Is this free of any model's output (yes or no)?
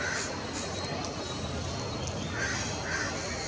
yes